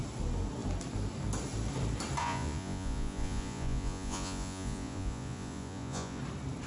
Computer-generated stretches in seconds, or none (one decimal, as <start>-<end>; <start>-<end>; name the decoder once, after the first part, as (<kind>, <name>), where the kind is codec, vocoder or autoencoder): 2.2-6.2 (vocoder, Vocos)